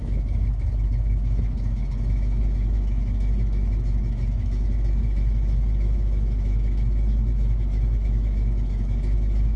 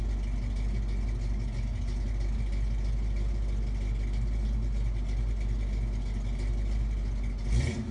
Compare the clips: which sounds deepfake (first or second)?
first